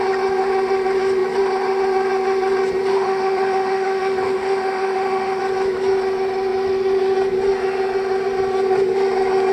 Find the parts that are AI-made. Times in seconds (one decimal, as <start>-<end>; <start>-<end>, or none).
2.9-5.4

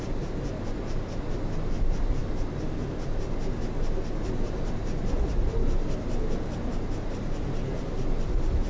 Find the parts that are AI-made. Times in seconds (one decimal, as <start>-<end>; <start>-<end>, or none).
none

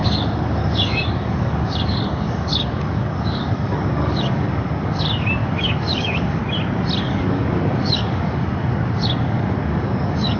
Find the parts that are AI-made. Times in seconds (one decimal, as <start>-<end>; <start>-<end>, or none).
0.0-6.4; 7.0-10.4